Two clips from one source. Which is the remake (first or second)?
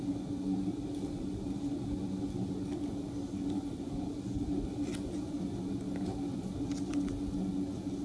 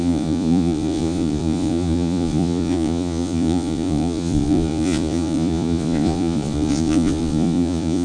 second